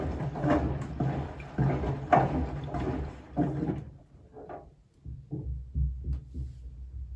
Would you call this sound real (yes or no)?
yes